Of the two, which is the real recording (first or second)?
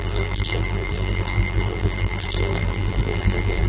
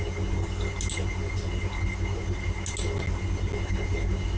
second